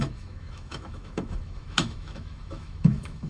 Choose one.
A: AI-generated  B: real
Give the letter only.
A